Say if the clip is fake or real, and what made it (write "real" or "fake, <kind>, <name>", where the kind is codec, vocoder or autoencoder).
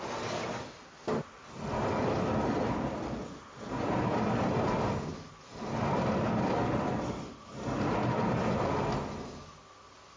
real